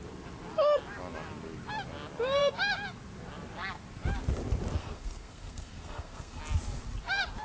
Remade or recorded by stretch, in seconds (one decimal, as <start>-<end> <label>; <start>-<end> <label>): 0.0-4.8 recorded; 4.8-6.4 remade; 6.4-7.4 recorded